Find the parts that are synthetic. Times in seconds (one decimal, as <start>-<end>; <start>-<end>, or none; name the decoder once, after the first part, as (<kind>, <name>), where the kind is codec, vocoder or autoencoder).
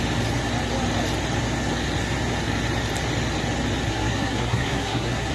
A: 3.9-5.3 (codec, SNAC)